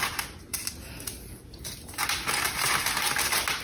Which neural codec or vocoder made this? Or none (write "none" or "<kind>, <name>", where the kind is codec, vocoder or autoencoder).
none